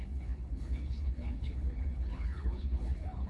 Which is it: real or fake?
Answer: fake